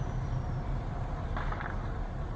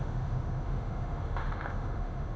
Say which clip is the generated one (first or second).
second